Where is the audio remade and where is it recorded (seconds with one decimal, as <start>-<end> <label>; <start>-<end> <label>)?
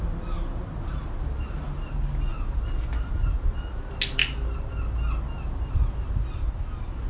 0.0-2.3 recorded; 2.3-3.6 remade; 3.6-4.2 recorded; 4.2-4.7 remade; 4.7-7.1 recorded